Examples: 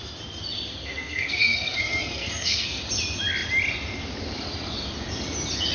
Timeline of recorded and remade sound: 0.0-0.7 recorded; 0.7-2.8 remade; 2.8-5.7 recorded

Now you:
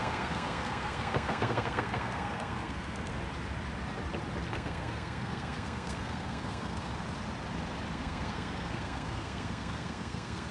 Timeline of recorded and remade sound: 0.0-3.1 remade; 3.1-4.5 recorded; 4.5-6.9 remade; 6.9-7.9 recorded; 7.9-10.5 remade

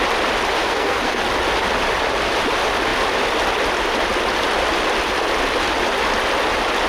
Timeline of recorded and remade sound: 0.0-0.6 recorded; 0.6-1.2 remade; 1.2-6.9 recorded

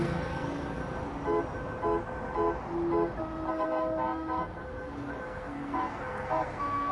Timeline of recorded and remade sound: 0.0-0.8 remade; 0.8-3.5 recorded; 3.5-6.9 remade

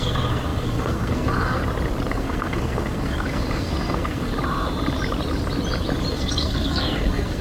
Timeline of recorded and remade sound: 0.0-1.6 remade; 1.6-2.1 recorded; 2.1-4.3 remade; 4.3-6.1 recorded; 6.1-7.4 remade